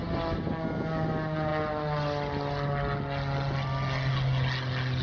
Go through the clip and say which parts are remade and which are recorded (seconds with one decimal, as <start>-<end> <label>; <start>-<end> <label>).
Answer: 0.0-5.0 recorded